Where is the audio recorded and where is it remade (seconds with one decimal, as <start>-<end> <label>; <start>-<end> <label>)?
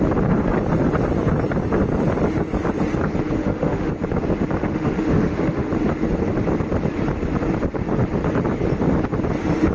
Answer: 0.0-3.4 recorded; 3.4-3.9 remade; 3.9-4.6 recorded; 4.6-5.7 remade; 5.7-9.7 recorded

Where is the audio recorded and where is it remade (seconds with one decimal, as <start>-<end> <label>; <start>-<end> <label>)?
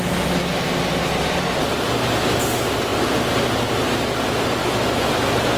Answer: 0.0-4.6 recorded; 4.6-5.1 remade; 5.1-5.6 recorded